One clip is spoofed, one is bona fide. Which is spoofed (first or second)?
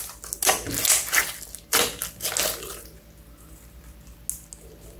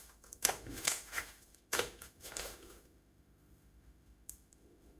second